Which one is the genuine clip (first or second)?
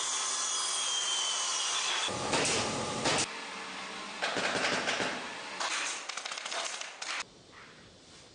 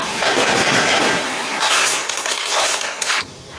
first